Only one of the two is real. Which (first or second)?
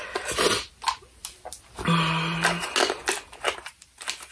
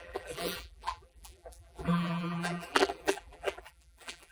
first